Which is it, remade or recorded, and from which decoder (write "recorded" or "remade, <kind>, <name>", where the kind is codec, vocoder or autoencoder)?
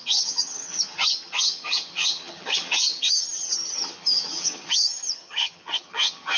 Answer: remade, vocoder, HiFi-GAN